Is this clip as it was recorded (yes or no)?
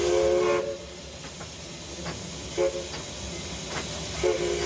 yes